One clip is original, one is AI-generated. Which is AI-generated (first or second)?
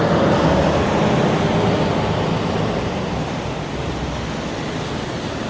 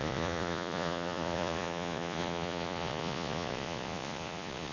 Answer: second